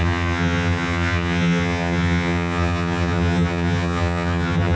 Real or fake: fake